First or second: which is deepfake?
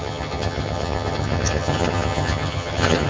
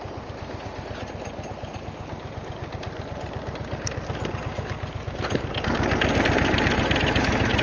first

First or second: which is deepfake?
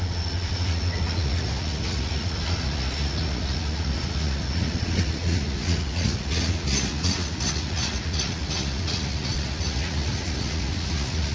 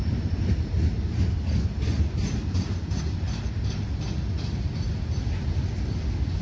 first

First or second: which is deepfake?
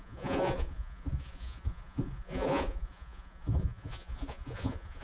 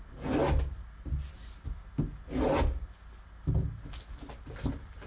first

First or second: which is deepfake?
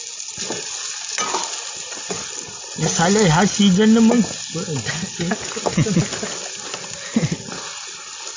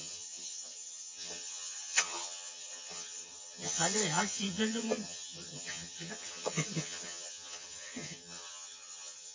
second